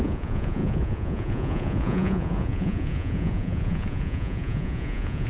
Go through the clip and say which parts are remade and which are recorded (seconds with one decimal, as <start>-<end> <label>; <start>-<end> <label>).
0.0-5.3 remade

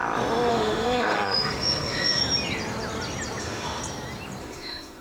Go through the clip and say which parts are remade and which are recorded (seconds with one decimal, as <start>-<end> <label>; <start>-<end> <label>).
0.0-0.5 recorded; 0.5-2.2 remade; 2.2-3.4 recorded; 3.4-3.8 remade; 3.8-4.4 recorded; 4.4-5.0 remade

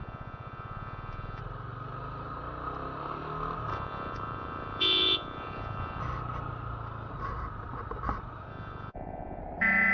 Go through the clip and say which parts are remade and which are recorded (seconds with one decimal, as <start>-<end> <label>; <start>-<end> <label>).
0.0-1.4 remade; 1.4-3.7 recorded; 3.7-6.0 remade; 6.0-8.5 recorded; 8.5-9.4 remade; 9.4-9.9 recorded

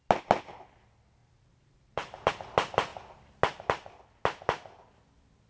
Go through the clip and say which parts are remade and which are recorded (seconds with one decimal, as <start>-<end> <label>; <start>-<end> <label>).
0.0-1.2 recorded; 1.2-2.3 remade; 2.3-5.5 recorded

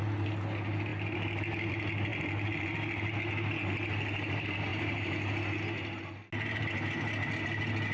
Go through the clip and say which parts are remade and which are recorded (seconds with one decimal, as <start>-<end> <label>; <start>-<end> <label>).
0.0-7.9 recorded

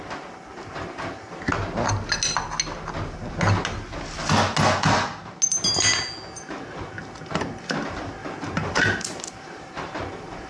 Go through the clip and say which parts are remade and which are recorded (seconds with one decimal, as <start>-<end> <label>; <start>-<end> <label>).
0.0-0.5 recorded; 0.5-1.1 remade; 1.1-8.2 recorded; 8.2-10.5 remade

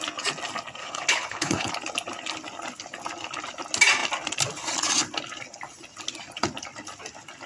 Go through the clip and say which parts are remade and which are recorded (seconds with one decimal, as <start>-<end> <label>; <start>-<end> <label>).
0.0-0.8 recorded; 0.8-1.7 remade; 1.7-7.5 recorded